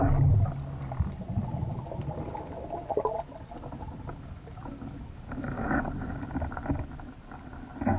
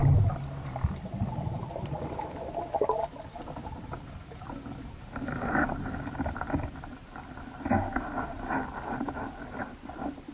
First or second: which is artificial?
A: second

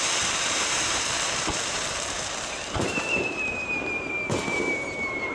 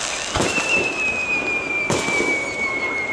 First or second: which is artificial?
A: first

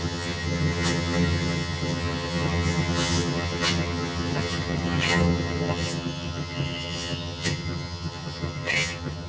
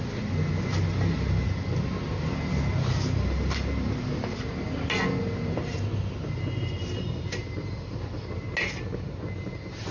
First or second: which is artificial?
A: first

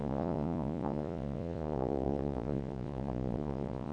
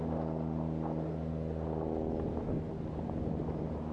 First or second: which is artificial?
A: first